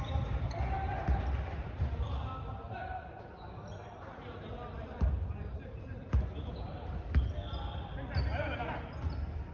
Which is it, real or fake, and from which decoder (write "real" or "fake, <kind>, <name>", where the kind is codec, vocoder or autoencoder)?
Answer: real